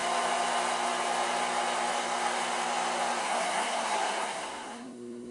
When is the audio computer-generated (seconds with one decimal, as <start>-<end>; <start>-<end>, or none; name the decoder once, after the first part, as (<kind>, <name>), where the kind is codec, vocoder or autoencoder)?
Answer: 3.2-5.3 (codec, SNAC)